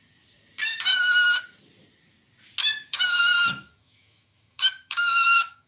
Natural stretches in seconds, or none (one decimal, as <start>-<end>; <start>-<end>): 0.0-0.9; 1.4-2.6